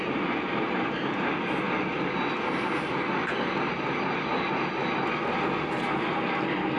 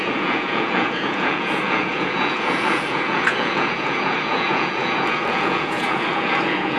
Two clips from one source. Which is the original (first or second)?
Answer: first